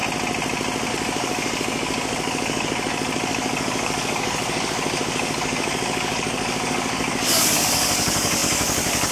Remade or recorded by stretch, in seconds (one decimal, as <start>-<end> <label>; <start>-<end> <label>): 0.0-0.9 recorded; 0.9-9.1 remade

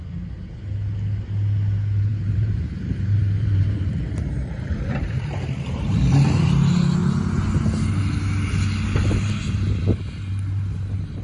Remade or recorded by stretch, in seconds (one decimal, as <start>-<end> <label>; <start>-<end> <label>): 0.0-2.1 recorded; 2.1-5.9 remade; 5.9-11.2 recorded

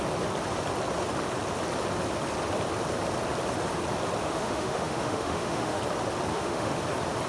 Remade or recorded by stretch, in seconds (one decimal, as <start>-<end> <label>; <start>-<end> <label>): 0.0-4.2 recorded; 4.2-5.8 remade; 5.8-6.3 recorded; 6.3-6.8 remade; 6.8-7.3 recorded

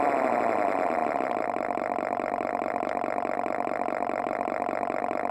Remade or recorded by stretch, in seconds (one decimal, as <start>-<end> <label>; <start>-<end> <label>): 0.0-1.0 remade; 1.0-4.2 recorded; 4.2-5.3 remade

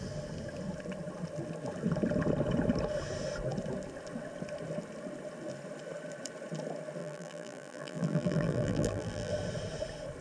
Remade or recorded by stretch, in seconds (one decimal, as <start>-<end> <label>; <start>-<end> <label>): 0.0-7.0 recorded; 7.0-9.3 remade; 9.3-10.2 recorded

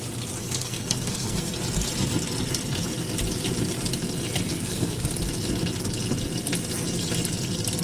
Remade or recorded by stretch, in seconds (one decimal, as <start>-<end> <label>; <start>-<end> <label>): 0.0-0.4 recorded; 0.4-1.5 remade; 1.5-4.5 recorded; 4.5-5.1 remade; 5.1-7.8 recorded